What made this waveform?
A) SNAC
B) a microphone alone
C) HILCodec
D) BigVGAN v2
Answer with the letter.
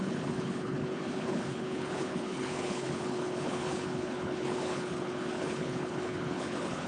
C